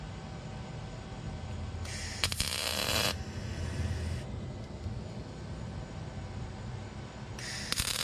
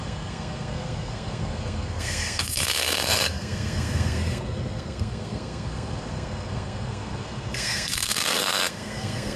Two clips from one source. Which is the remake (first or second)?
second